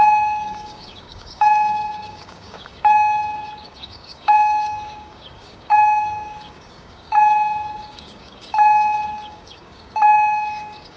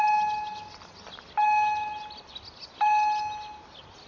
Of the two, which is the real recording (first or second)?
second